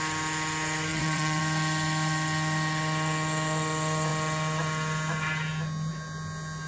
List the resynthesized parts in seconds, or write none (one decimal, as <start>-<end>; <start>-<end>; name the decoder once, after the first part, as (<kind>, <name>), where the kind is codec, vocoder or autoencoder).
0.9-1.4 (vocoder, WaveNeXt)